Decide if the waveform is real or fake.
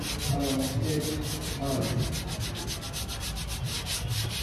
real